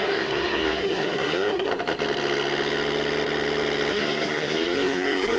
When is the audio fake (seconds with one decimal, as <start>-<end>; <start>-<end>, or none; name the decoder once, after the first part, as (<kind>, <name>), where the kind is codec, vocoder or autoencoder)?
0.0-1.7 (codec, SNAC); 3.9-5.4